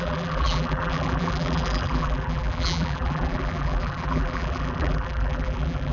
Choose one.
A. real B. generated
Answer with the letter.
B